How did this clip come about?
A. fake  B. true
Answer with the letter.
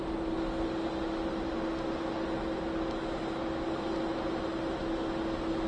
B